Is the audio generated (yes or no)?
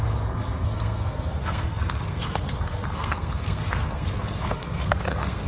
yes